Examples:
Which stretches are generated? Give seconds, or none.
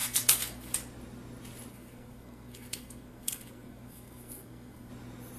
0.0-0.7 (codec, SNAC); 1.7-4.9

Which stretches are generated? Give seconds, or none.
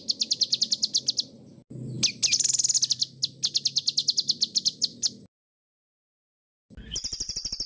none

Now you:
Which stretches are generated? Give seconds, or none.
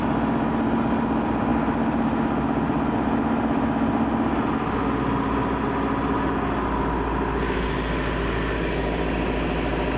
none